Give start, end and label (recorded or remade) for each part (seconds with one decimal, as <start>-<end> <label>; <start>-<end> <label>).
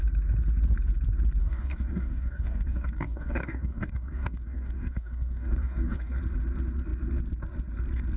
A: 0.0-1.4 recorded; 1.4-6.2 remade; 6.2-8.2 recorded